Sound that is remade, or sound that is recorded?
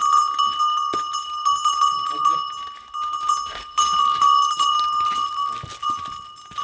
recorded